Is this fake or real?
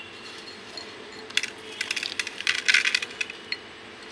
real